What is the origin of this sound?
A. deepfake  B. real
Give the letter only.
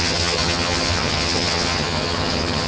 A